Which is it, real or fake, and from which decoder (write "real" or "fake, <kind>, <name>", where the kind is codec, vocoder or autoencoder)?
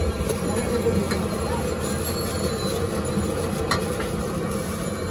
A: real